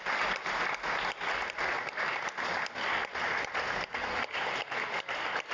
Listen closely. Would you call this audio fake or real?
real